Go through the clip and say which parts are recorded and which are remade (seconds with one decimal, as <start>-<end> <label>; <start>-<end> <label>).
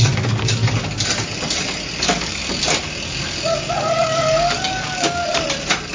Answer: 0.0-0.6 remade; 0.6-2.0 recorded; 2.0-2.4 remade; 2.4-3.8 recorded; 3.8-5.2 remade; 5.2-5.9 recorded